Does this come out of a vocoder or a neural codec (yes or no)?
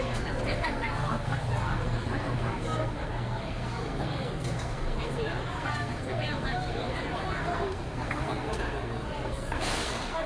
yes